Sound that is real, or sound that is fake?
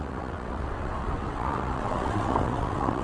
fake